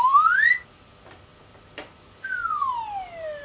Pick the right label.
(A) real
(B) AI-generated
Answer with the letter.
A